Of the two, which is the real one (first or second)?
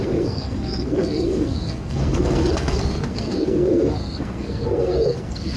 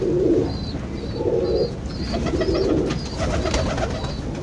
second